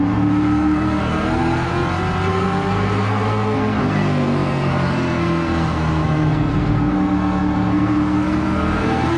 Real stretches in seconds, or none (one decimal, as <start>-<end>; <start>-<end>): 1.7-2.3